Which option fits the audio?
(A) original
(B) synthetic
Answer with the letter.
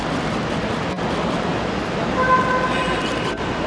A